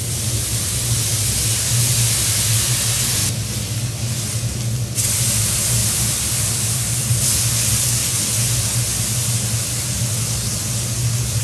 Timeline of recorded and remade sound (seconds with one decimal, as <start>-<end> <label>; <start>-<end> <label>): 0.0-5.8 recorded; 5.8-7.1 remade; 7.1-11.4 recorded